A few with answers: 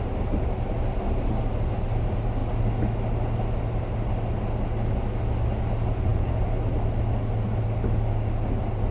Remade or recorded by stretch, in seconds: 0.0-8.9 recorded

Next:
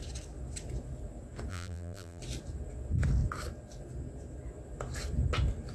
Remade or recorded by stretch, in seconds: 0.0-1.5 recorded; 1.5-2.2 remade; 2.2-5.7 recorded

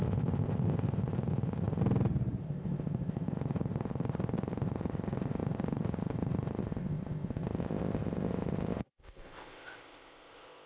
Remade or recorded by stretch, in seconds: 0.0-1.8 remade; 1.8-2.4 recorded; 2.4-10.7 remade